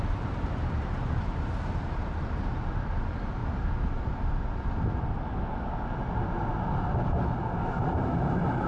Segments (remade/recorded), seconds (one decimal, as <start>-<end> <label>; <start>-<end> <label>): 0.0-3.4 remade; 3.4-7.8 recorded; 7.8-8.7 remade